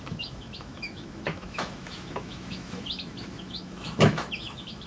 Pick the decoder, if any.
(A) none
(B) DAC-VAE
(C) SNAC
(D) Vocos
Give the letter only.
B